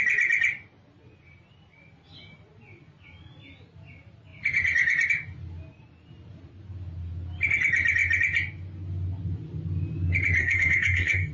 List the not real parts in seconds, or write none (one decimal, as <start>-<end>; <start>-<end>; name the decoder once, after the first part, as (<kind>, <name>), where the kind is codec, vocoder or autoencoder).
10.4-11.3 (codec, DAC)